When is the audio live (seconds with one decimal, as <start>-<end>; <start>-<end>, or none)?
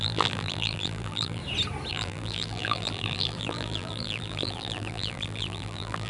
1.4-1.9